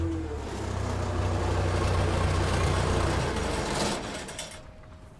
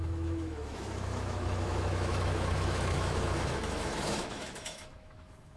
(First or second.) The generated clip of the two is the second